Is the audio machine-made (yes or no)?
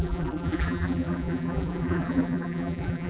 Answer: yes